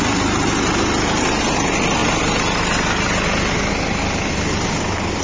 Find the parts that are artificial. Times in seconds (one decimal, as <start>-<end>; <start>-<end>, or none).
none